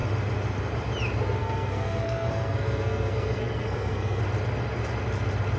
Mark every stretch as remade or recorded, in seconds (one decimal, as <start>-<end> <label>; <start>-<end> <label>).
0.0-1.4 recorded; 1.4-4.2 remade; 4.2-5.6 recorded